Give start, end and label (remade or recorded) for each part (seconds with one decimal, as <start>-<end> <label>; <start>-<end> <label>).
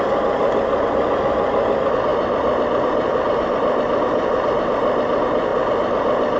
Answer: 0.0-6.4 recorded